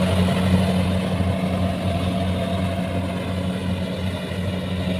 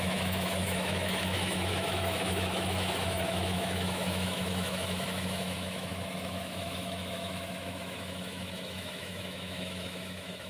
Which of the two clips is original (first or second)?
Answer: first